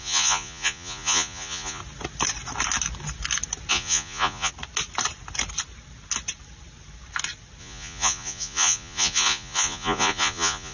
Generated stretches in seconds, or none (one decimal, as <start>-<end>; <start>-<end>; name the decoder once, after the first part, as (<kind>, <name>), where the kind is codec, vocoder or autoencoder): 0.0-1.8 (vocoder, Vocos); 3.7-4.5; 7.6-10.7